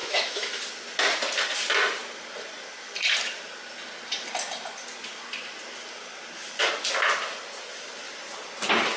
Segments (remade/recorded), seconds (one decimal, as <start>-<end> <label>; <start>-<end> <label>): 0.0-0.6 remade; 0.6-9.0 recorded